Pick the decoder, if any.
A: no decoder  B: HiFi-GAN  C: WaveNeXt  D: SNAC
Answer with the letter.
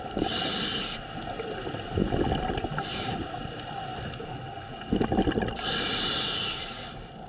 A